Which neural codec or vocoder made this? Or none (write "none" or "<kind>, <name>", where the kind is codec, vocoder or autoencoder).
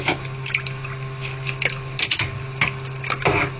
none